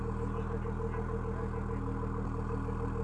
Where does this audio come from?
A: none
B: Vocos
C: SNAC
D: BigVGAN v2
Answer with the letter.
A